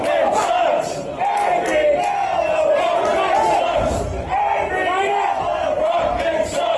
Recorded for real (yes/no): yes